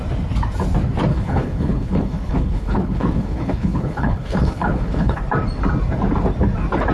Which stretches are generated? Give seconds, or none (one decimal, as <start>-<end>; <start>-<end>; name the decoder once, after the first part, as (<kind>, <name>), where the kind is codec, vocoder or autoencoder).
1.1-5.2 (codec, HILCodec)